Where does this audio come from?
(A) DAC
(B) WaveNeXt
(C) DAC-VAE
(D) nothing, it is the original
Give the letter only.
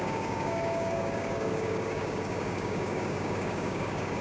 A